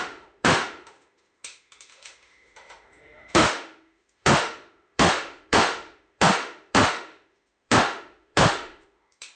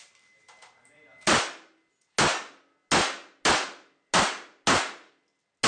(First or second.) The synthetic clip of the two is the first